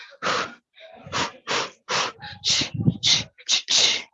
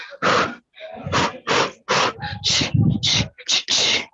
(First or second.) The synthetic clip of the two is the first